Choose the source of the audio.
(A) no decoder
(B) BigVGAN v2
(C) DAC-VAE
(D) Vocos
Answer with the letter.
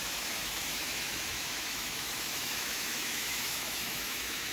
C